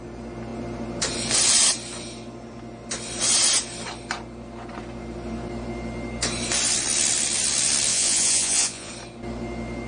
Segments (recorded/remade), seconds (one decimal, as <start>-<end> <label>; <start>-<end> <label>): 0.0-7.9 recorded; 7.9-8.9 remade; 8.9-9.9 recorded